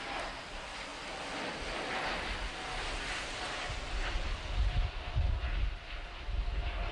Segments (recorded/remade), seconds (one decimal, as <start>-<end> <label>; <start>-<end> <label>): 0.0-6.9 recorded